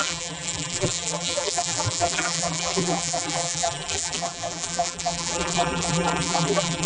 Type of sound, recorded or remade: remade